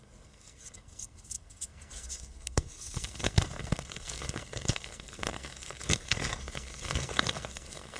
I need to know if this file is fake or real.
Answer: fake